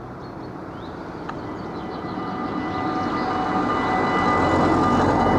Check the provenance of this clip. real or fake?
real